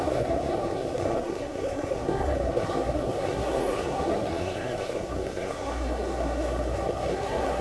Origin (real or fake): fake